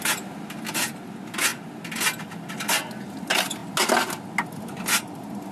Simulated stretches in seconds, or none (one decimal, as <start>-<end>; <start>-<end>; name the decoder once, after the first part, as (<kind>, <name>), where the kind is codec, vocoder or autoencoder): none